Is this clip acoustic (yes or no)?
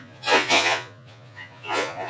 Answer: no